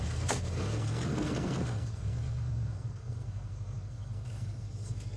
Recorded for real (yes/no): no